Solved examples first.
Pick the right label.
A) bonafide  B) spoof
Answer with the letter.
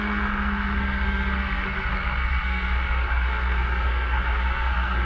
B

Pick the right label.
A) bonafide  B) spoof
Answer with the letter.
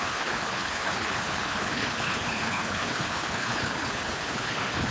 B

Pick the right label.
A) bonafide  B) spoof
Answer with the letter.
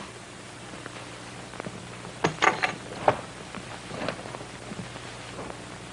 A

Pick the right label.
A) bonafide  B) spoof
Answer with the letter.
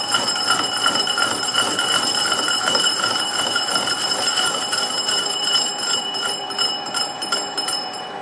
A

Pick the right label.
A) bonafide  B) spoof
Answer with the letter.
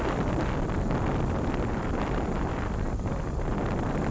A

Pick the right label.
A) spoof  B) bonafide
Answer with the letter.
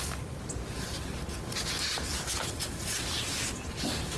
B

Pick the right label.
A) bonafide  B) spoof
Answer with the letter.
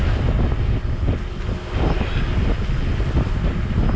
A